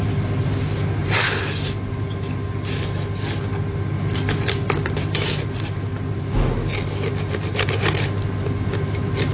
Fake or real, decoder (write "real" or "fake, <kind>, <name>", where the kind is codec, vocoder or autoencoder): real